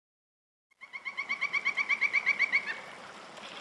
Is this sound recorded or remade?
recorded